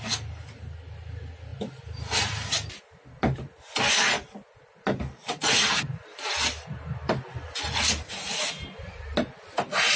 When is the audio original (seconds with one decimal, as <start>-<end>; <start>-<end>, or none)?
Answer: 0.0-10.0